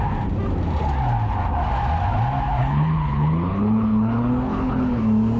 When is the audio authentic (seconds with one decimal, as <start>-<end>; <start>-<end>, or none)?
0.0-2.6; 5.0-5.4